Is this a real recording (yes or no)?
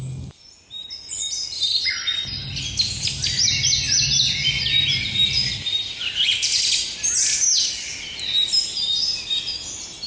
yes